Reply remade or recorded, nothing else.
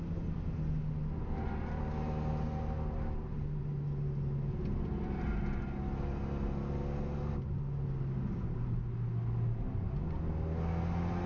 recorded